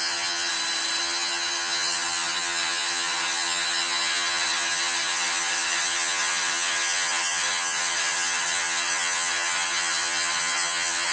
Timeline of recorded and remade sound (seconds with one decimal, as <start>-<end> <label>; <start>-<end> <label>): 0.0-0.5 remade; 0.5-1.0 recorded; 1.0-11.1 remade